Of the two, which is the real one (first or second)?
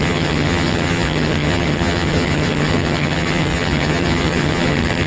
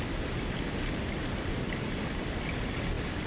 second